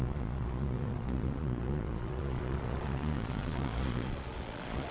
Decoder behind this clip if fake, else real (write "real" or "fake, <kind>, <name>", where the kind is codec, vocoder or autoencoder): fake, vocoder, Vocos